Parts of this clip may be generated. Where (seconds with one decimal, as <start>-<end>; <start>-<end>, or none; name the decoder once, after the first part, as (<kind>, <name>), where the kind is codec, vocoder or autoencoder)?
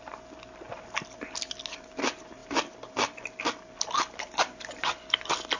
none